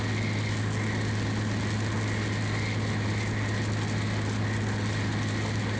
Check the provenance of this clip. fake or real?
real